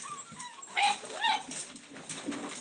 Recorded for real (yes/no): yes